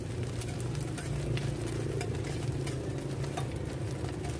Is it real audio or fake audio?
real